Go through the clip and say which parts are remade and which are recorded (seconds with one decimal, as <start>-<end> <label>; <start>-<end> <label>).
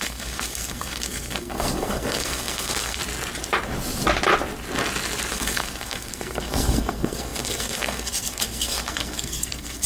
0.0-3.0 remade; 3.0-5.3 recorded; 5.3-9.9 remade